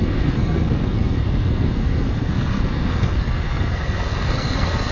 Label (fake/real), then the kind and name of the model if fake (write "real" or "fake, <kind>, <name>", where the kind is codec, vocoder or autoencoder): fake, codec, SNAC